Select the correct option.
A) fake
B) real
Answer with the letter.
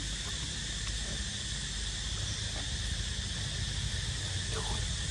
B